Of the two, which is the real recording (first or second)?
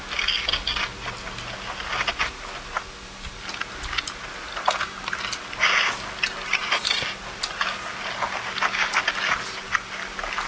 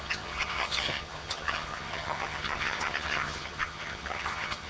first